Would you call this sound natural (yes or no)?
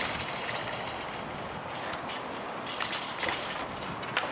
yes